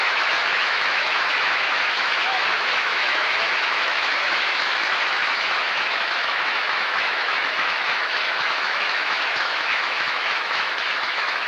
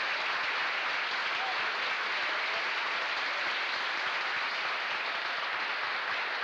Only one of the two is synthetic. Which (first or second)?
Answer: first